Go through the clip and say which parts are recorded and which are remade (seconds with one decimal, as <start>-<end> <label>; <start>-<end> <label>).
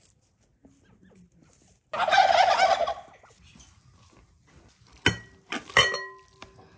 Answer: 0.0-6.8 recorded